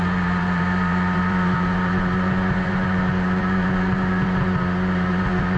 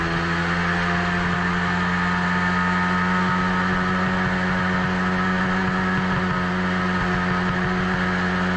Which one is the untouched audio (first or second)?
second